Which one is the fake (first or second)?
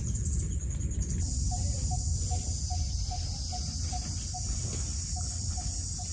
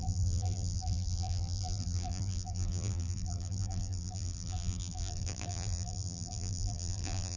second